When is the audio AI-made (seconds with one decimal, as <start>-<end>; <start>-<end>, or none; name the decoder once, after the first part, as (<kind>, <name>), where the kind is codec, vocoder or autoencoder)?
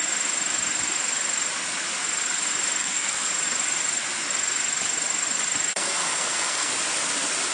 2.8-3.3 (codec, SNAC); 5.7-6.7